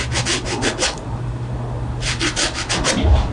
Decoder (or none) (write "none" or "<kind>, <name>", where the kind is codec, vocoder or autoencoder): none